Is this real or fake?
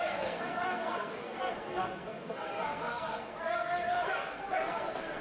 fake